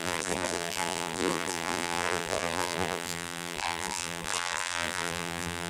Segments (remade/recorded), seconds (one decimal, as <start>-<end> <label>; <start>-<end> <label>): 0.0-5.7 remade